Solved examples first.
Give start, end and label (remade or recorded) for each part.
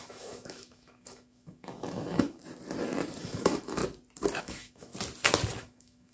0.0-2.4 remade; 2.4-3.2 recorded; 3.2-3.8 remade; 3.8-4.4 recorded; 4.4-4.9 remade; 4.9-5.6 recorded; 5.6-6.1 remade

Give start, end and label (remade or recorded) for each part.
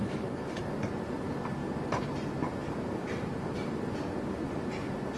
0.0-0.6 remade; 0.6-5.2 recorded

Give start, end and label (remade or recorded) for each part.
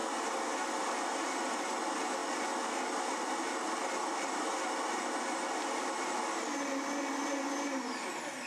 0.0-8.5 recorded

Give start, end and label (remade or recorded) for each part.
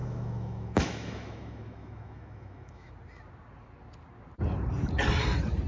0.0-2.9 remade; 2.9-5.7 recorded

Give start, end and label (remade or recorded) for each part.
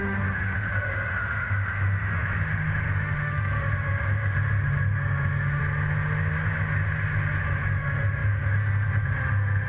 0.0-5.6 remade; 5.6-7.4 recorded; 7.4-9.7 remade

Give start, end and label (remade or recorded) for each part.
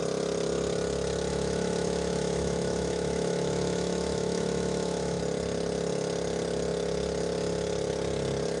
0.0-1.3 recorded; 1.3-5.2 remade; 5.2-8.6 recorded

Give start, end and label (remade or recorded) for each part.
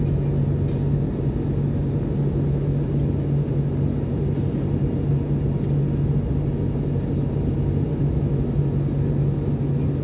0.0-7.9 recorded; 7.9-8.4 remade; 8.4-10.0 recorded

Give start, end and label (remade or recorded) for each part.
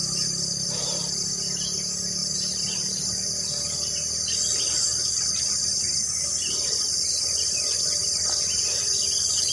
0.0-9.5 recorded